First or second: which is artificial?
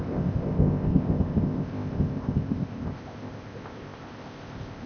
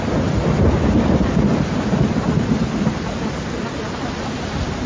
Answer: first